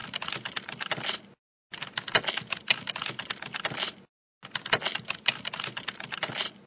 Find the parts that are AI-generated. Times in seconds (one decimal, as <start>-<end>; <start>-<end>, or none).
none